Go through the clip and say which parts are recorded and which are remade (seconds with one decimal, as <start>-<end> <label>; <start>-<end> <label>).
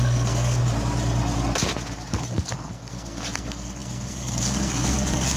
0.0-0.6 remade; 0.6-2.3 recorded; 2.3-5.4 remade